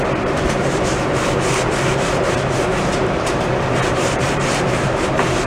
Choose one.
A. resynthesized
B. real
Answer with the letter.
A